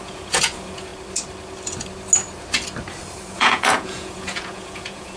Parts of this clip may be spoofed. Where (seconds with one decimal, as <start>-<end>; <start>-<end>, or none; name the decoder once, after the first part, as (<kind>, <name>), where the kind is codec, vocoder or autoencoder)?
0.0-0.9 (vocoder, Vocos); 3.3-5.2